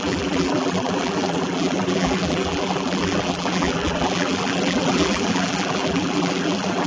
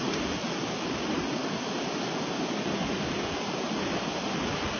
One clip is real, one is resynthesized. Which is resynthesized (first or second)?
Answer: first